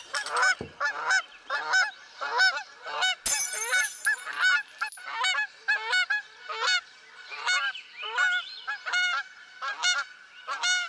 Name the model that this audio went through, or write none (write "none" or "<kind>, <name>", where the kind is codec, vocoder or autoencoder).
none